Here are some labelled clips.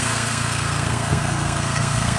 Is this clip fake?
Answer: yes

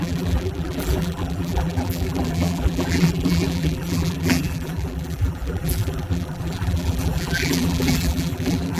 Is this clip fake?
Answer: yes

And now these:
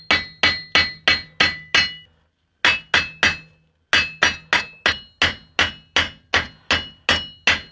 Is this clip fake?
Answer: no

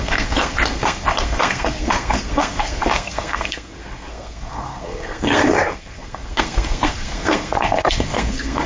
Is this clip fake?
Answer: yes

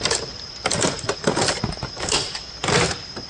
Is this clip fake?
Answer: no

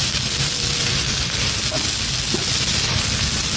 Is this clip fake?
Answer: no